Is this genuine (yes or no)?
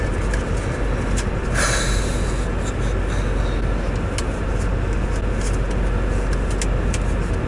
yes